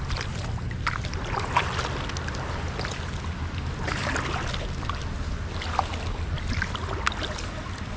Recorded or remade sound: recorded